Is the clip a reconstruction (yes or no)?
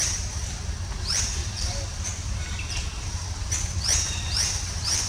yes